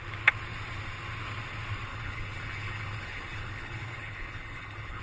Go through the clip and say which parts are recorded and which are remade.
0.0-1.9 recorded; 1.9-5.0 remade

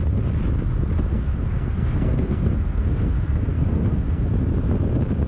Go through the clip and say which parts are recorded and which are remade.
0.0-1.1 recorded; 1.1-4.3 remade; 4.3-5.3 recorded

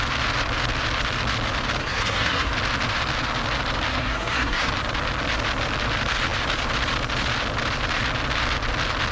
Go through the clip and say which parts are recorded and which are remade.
0.0-1.8 recorded; 1.8-2.5 remade; 2.5-3.9 recorded; 3.9-4.7 remade; 4.7-9.1 recorded

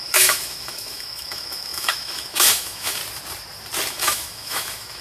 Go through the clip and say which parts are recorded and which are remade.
0.0-3.0 remade; 3.0-3.9 recorded; 3.9-5.0 remade

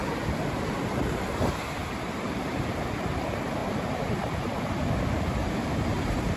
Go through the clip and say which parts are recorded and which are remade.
0.0-0.9 recorded; 0.9-6.4 remade

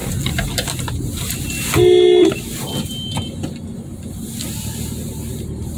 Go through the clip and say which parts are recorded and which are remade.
0.0-5.8 recorded

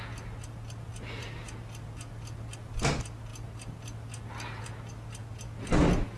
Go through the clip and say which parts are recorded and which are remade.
0.0-6.2 recorded